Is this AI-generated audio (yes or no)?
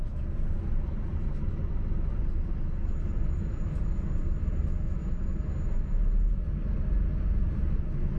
no